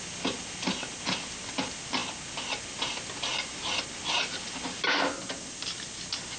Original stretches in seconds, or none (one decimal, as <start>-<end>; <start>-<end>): 0.0-6.4